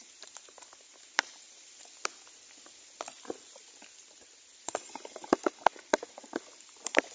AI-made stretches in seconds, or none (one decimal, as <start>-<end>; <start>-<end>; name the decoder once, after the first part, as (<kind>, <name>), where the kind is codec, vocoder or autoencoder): 0.0-1.8 (vocoder, BigVGAN v2)